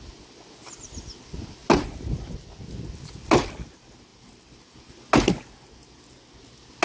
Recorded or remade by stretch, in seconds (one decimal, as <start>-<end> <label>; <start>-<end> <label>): 0.0-6.8 recorded